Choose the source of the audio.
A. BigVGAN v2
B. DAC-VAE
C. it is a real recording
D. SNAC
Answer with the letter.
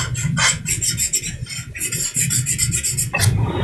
C